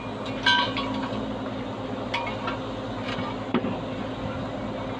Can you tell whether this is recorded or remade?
recorded